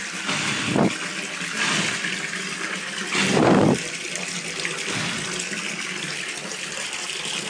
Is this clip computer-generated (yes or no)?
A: no